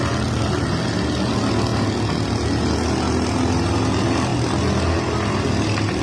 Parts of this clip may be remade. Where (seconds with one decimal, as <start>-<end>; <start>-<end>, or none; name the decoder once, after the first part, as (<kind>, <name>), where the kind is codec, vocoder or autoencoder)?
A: none